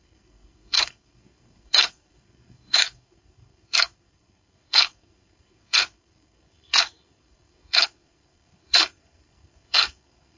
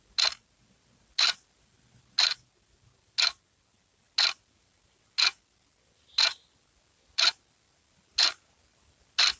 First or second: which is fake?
first